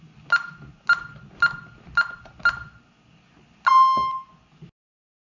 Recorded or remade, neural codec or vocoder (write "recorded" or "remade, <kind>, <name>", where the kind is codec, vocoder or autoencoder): recorded